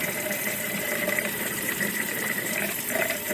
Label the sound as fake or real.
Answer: fake